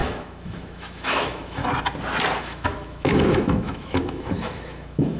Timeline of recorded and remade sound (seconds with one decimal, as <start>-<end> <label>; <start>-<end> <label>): 0.0-1.6 remade; 1.6-2.4 recorded; 2.4-5.2 remade